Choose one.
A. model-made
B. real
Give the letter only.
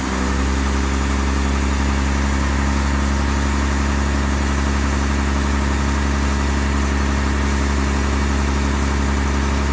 B